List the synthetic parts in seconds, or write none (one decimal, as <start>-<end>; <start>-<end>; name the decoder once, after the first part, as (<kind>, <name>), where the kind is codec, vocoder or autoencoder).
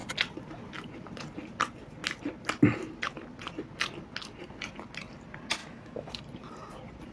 5.6-6.2 (autoencoder, DAC-VAE)